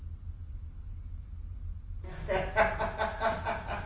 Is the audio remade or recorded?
recorded